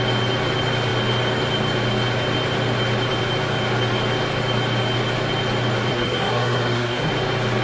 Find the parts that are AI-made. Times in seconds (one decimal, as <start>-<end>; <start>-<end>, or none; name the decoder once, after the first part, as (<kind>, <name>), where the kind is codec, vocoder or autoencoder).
5.9-7.1 (codec, SNAC)